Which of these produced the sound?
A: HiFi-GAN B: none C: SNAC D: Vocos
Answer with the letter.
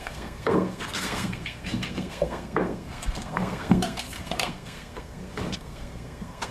C